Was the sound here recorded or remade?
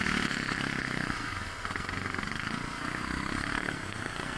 remade